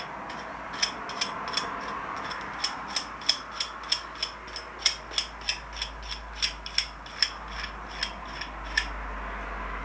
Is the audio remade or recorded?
recorded